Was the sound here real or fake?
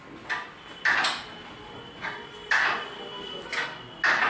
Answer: real